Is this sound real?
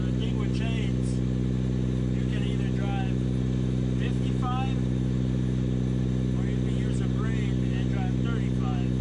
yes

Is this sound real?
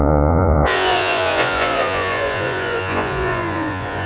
no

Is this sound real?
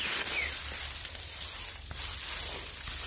yes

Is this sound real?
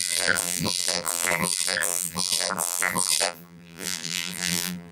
no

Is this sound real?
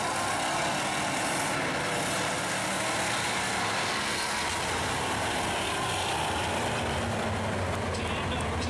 yes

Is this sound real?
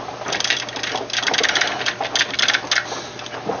yes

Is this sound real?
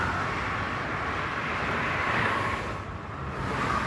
yes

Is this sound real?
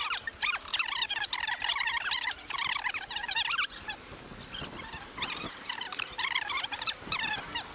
yes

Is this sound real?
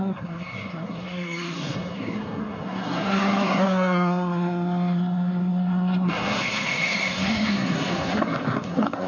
no